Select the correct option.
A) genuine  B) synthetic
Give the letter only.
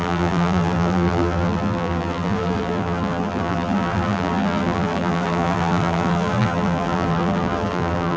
B